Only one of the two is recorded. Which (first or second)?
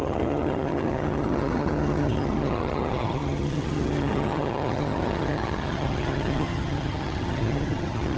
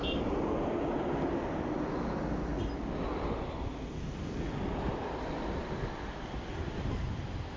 second